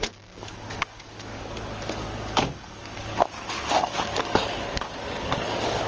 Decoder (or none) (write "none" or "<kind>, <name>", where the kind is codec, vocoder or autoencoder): codec, DAC